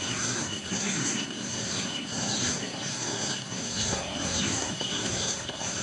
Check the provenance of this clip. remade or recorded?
remade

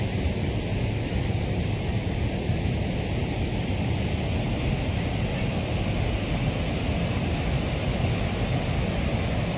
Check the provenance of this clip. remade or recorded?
recorded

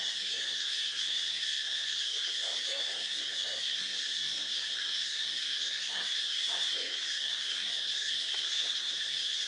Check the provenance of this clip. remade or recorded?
remade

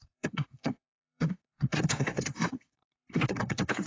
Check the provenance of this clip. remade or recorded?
remade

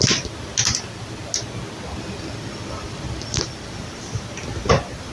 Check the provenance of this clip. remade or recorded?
recorded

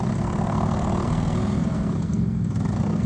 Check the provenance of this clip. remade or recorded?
remade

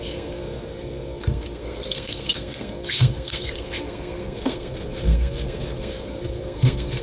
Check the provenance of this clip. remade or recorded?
remade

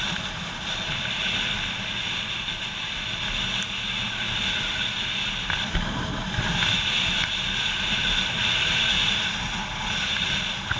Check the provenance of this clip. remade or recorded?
recorded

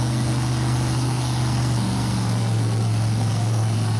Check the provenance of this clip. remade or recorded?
remade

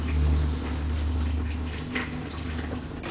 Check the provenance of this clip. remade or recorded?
recorded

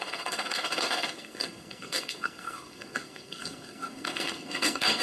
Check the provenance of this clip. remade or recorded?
remade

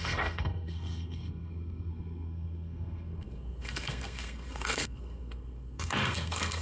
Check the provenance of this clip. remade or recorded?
remade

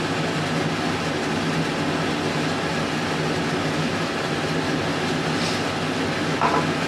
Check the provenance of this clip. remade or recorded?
recorded